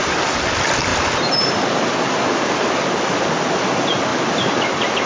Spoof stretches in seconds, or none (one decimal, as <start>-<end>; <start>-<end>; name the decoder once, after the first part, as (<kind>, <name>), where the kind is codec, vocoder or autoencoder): none